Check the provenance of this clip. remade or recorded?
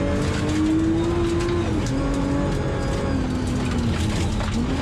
recorded